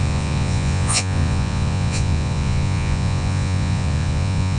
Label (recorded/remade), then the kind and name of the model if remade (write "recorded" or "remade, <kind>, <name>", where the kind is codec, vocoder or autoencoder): remade, vocoder, Vocos